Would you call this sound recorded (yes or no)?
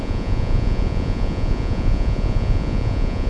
no